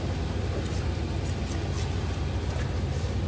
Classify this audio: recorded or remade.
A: recorded